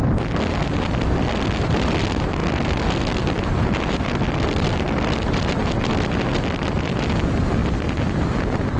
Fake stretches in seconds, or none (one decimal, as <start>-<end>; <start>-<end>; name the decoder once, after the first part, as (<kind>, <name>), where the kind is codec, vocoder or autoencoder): none